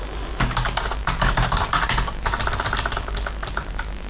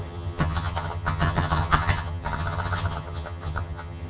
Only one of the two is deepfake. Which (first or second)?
second